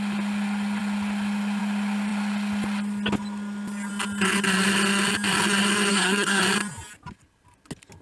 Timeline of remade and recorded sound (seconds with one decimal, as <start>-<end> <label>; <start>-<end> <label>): 0.0-5.9 recorded; 5.9-6.4 remade; 6.4-8.0 recorded

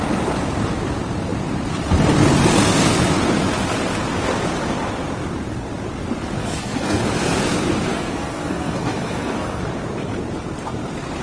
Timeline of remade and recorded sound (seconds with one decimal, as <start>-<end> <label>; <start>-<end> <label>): 0.0-6.4 recorded; 6.4-7.0 remade; 7.0-7.9 recorded; 7.9-9.6 remade; 9.6-11.2 recorded

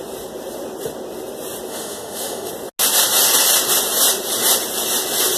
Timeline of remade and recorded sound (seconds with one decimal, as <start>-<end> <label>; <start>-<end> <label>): 0.0-1.7 recorded; 1.7-2.5 remade; 2.5-5.4 recorded

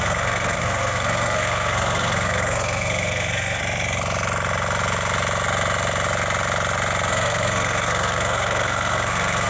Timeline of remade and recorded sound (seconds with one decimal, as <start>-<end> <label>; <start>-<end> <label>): 0.0-3.6 remade; 3.6-7.1 recorded; 7.1-9.5 remade